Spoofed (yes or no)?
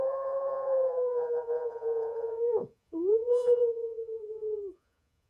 yes